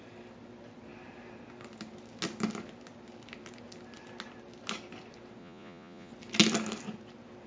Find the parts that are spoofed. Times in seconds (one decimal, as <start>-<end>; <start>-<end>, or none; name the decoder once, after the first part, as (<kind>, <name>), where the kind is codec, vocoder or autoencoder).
5.4-6.1 (vocoder, Vocos)

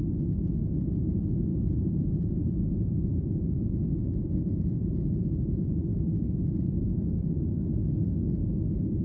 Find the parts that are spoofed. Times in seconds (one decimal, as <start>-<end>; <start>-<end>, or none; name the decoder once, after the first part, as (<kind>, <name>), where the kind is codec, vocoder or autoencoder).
1.5-5.3 (vocoder, Vocos)

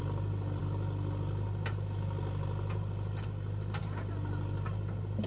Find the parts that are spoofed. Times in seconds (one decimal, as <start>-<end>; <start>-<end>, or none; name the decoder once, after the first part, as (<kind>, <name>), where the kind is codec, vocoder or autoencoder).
none

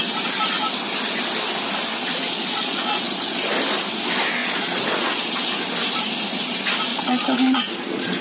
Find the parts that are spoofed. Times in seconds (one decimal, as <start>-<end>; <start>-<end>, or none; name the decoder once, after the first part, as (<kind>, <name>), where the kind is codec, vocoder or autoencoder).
1.9-3.4 (vocoder, Vocos); 4.4-5.5; 6.9-8.2

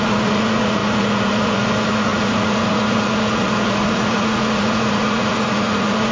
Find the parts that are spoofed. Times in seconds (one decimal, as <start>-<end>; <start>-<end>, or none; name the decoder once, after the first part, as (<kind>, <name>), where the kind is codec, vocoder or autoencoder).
0.0-6.1 (vocoder, Vocos)